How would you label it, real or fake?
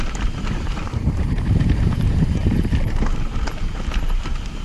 fake